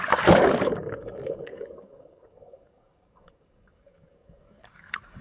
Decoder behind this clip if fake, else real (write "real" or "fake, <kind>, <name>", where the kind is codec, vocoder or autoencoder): fake, codec, DAC